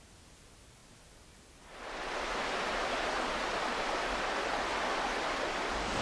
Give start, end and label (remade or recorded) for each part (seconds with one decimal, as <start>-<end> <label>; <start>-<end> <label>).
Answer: 0.0-6.0 recorded